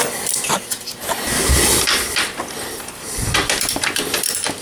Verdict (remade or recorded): remade